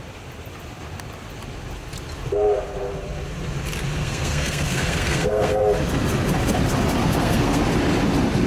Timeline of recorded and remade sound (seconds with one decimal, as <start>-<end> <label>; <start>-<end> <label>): 0.0-4.0 recorded; 4.0-5.6 remade; 5.6-7.0 recorded; 7.0-7.6 remade; 7.6-8.5 recorded